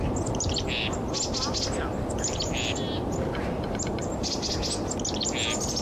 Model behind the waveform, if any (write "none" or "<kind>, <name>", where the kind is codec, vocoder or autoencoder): none